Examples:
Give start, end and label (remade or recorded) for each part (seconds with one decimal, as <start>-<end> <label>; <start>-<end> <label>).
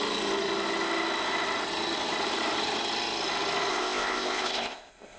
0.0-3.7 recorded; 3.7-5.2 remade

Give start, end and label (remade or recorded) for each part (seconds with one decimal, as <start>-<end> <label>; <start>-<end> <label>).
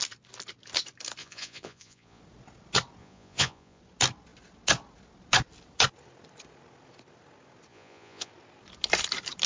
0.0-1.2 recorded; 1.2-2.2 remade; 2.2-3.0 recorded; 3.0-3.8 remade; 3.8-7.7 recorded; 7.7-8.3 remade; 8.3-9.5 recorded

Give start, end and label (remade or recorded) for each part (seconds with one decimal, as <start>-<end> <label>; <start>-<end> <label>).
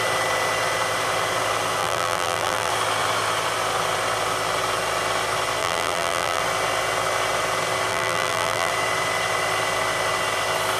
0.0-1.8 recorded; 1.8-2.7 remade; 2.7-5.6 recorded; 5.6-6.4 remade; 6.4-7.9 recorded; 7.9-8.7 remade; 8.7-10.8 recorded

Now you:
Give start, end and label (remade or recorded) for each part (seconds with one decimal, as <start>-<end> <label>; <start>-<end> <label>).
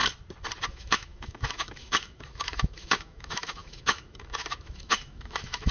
0.0-0.7 recorded; 0.7-5.7 remade